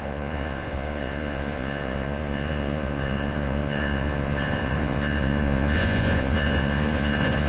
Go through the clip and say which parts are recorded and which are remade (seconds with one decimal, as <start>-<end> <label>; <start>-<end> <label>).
0.0-7.5 remade